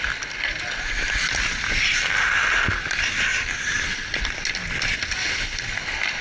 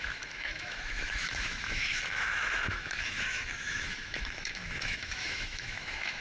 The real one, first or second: first